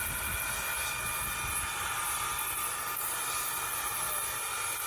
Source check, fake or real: real